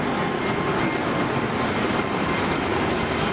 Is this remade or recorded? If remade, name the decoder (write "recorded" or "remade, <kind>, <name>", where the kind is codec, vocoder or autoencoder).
recorded